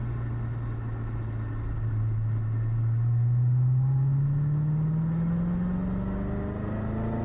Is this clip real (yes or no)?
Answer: yes